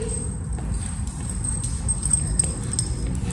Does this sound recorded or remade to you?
recorded